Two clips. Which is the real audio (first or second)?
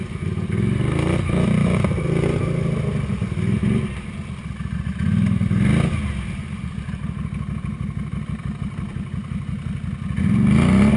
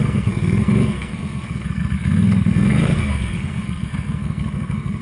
first